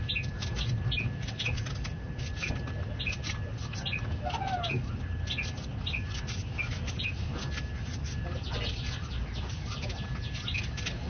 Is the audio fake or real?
real